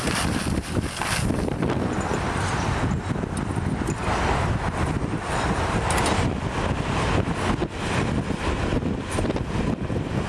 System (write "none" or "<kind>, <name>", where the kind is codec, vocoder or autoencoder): none